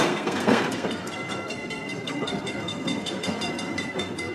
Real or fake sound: fake